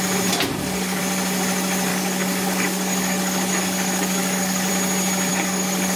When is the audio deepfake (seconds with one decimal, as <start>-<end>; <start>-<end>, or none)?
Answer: 0.5-1.0; 1.9-4.7; 5.3-6.0